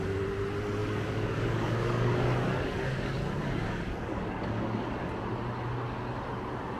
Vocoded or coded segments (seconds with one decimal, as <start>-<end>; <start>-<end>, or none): 0.8-4.9